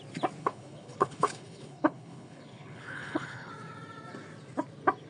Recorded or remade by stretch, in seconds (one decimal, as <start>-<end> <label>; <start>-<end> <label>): 0.0-0.4 recorded; 0.4-3.5 remade; 3.5-5.1 recorded